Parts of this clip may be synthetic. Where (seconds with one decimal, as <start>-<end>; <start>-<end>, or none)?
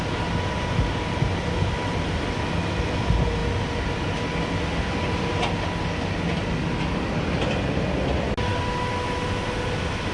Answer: none